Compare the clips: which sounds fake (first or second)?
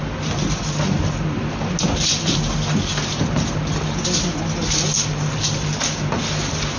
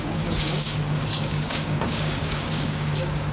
second